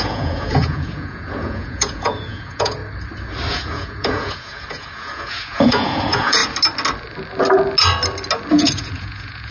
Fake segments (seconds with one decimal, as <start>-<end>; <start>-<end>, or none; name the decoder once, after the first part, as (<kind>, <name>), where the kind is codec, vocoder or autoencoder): 0.0-2.8 (vocoder, Vocos); 3.5-6.4; 8.5-9.5